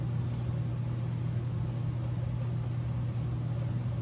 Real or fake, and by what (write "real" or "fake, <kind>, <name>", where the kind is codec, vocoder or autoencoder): real